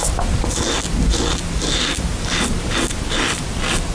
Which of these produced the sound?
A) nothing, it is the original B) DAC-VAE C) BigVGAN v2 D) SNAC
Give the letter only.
A